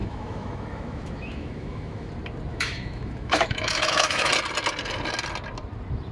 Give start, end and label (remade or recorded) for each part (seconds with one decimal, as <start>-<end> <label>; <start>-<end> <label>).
0.0-2.1 remade; 2.1-2.5 recorded; 2.5-4.3 remade; 4.3-6.1 recorded